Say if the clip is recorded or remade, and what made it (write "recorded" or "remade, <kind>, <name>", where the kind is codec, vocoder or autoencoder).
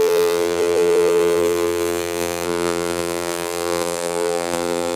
remade, vocoder, BigVGAN v2